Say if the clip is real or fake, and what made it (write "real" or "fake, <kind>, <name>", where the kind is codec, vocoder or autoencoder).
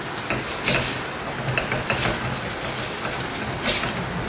real